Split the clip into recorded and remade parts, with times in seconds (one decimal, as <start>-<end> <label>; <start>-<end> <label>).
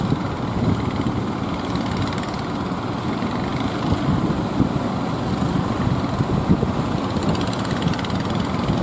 0.0-8.8 recorded